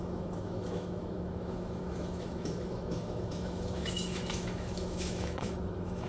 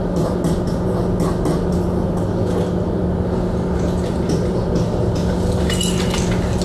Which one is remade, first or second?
first